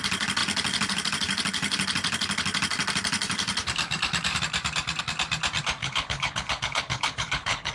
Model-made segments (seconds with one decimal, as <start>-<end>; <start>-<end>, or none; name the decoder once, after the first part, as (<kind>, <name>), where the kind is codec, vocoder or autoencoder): 5.8-7.7 (codec, HILCodec)